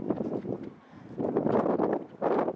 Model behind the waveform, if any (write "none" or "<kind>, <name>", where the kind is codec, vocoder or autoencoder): none